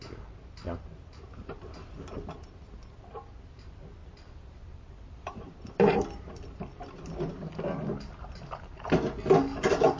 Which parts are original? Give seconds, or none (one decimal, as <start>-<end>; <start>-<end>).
0.0-10.0